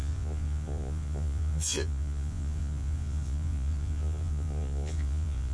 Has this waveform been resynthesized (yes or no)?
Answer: yes